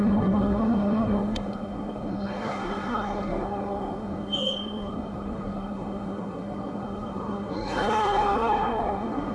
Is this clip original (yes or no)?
no